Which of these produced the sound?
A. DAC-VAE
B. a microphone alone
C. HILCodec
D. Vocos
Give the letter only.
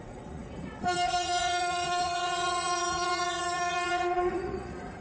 D